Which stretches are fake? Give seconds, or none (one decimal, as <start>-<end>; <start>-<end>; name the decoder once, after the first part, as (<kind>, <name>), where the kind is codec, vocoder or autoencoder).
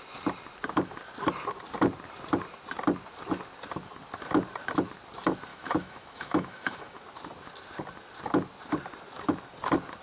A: 5.5-7.0 (autoencoder, DAC-VAE)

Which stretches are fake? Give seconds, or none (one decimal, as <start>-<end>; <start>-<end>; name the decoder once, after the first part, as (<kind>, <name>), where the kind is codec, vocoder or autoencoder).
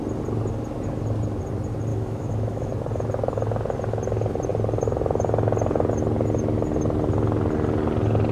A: 1.9-2.7 (autoencoder, DAC-VAE)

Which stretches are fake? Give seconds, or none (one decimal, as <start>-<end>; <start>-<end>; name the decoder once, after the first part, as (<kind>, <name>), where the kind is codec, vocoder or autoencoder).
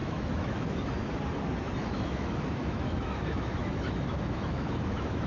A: 0.0-0.9 (autoencoder, DAC-VAE); 1.8-5.3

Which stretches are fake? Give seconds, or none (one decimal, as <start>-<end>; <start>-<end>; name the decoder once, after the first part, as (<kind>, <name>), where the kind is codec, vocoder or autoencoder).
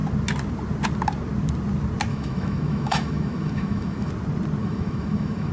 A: 2.1-4.1 (autoencoder, DAC-VAE); 4.6-5.5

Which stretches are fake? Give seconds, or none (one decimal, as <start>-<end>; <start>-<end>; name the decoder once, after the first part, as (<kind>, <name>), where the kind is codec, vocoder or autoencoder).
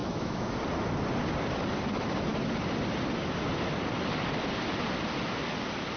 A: 0.0-0.6 (autoencoder, DAC-VAE)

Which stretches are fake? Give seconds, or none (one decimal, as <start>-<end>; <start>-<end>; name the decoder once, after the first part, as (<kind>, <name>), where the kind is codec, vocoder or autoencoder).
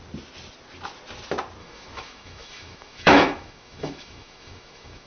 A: 1.6-5.1 (autoencoder, DAC-VAE)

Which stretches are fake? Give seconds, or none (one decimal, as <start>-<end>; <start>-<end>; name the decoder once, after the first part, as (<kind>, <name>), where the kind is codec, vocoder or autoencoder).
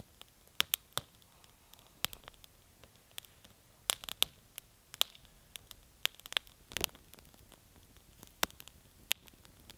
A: none